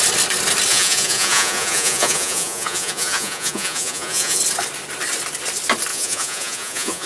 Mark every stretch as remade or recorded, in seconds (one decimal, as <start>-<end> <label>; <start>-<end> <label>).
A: 0.0-0.7 recorded; 0.7-4.4 remade; 4.4-5.9 recorded; 5.9-7.1 remade